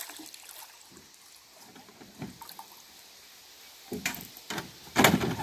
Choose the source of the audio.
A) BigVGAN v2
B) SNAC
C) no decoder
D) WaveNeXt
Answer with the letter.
C